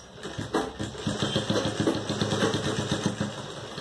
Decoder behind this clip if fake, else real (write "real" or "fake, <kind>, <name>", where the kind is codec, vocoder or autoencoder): real